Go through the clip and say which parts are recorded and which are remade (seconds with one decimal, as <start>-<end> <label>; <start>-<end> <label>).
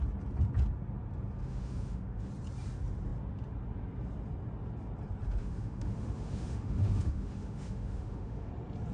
0.0-1.4 recorded; 1.4-2.3 remade; 2.3-5.4 recorded; 5.4-8.5 remade; 8.5-8.9 recorded